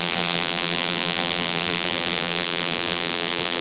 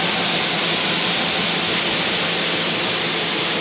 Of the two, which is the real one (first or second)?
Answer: second